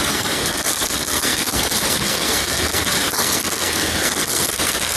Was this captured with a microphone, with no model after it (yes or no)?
no